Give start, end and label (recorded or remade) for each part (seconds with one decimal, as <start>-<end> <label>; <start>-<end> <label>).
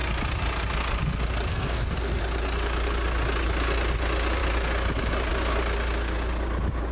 0.0-1.5 recorded; 1.5-2.2 remade; 2.2-6.9 recorded